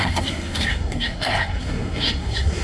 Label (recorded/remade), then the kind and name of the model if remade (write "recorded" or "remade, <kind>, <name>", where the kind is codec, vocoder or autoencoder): remade, codec, SNAC